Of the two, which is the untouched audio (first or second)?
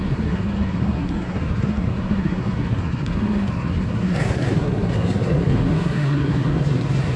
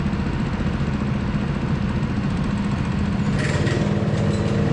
second